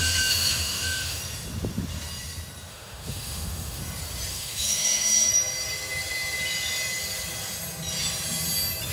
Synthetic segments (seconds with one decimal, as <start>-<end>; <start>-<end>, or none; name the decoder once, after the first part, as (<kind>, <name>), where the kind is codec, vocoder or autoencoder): 0.0-1.2 (autoencoder, DAC-VAE); 2.7-3.8; 4.3-5.3